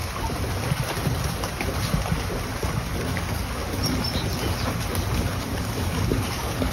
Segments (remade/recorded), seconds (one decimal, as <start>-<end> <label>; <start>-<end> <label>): 0.0-3.0 recorded; 3.0-3.6 remade; 3.6-5.6 recorded; 5.6-6.7 remade